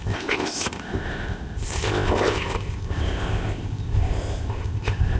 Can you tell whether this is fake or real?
fake